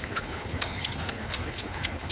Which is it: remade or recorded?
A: remade